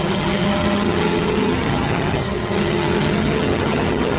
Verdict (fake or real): fake